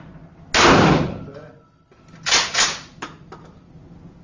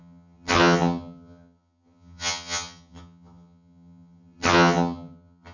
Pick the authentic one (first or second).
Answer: first